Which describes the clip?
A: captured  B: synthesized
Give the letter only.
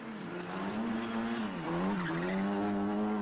A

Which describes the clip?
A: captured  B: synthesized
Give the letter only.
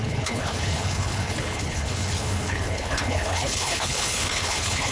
B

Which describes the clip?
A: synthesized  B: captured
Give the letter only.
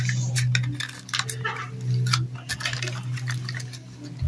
B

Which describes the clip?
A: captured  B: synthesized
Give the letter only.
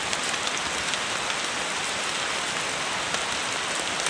A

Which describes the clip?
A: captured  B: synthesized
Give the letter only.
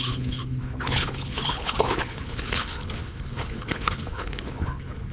B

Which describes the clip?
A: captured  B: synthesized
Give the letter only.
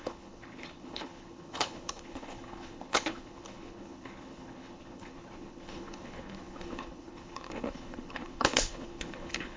B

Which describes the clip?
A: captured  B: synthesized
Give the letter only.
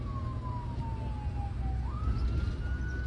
A